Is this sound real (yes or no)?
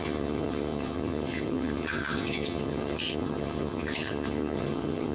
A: no